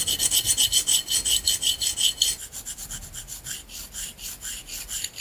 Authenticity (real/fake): real